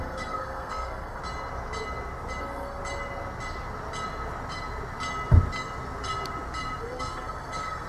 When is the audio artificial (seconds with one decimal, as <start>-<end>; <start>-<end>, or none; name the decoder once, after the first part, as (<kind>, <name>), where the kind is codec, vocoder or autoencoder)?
0.0-1.2 (codec, SNAC); 2.4-2.8; 6.8-7.9